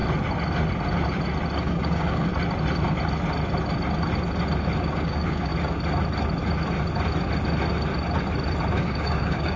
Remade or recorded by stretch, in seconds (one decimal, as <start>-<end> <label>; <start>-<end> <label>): 0.0-1.6 recorded; 1.6-2.3 remade; 2.3-4.8 recorded; 4.8-5.5 remade; 5.5-8.8 recorded; 8.8-9.6 remade